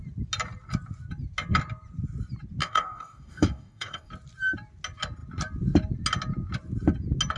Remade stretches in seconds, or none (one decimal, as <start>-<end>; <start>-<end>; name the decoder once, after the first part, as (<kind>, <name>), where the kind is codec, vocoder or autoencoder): 2.6-4.1 (codec, DAC)